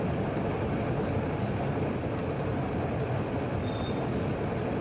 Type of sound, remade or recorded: recorded